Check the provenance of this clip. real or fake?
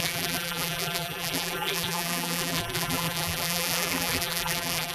fake